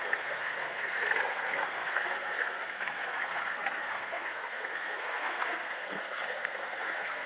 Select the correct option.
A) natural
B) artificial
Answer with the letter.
B